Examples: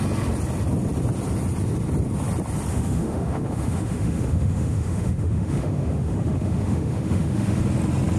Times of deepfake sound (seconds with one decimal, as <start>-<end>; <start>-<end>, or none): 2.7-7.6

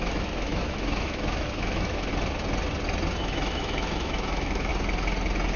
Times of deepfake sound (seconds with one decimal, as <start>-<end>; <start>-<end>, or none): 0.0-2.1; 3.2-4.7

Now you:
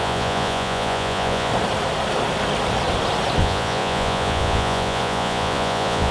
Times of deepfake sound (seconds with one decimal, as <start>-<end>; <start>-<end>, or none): 0.0-1.5; 3.4-6.1

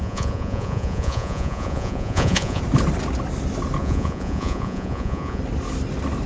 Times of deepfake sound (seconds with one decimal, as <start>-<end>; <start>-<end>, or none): 0.0-2.6; 3.8-5.4